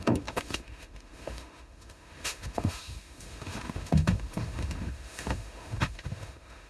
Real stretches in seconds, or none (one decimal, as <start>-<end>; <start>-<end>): none